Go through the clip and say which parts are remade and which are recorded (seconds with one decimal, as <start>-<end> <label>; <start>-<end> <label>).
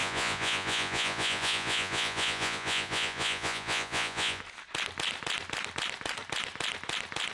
0.0-4.4 remade; 4.4-7.3 recorded